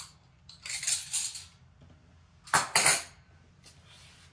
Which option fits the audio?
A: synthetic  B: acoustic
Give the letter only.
B